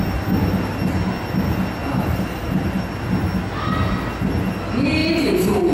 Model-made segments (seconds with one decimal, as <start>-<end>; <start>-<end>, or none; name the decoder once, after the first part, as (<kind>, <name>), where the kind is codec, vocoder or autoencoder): 1.8-2.7 (vocoder, BigVGAN v2)

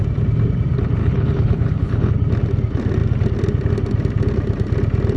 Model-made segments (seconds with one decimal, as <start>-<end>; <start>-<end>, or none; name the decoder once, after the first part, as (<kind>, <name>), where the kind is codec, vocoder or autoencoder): 1.0-2.1 (codec, HILCodec)

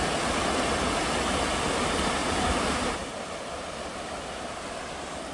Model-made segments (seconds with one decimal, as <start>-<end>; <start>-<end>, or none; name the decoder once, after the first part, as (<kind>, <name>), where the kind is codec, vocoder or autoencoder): 2.2-3.1 (vocoder, BigVGAN v2)

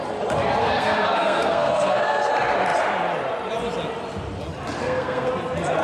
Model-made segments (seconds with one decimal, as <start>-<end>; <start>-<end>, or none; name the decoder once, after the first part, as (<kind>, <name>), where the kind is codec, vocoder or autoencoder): 0.6-2.3 (codec, SNAC); 4.8-5.3

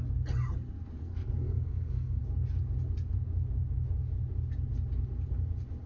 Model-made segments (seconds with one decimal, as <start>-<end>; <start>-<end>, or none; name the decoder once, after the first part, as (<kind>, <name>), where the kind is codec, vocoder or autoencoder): 1.0-2.2 (codec, SNAC)

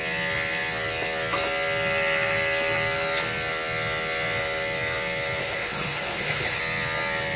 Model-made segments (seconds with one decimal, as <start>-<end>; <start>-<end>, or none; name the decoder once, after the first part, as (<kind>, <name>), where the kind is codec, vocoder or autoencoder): 5.4-6.6 (codec, HILCodec)

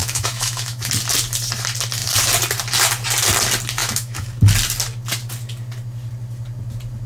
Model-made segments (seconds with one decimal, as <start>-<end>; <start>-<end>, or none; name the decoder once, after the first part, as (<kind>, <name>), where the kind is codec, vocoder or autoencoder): 0.0-0.9 (autoencoder, DAC-VAE); 3.8-4.4